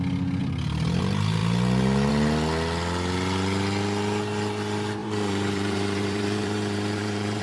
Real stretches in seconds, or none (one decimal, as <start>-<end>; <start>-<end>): 0.0-5.0